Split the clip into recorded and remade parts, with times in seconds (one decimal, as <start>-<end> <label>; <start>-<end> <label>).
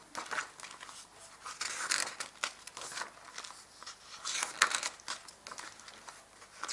0.0-6.7 recorded